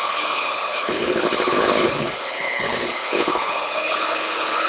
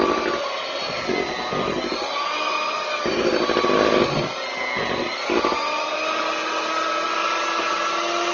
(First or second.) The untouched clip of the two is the second